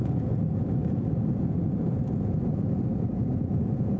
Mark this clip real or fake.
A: fake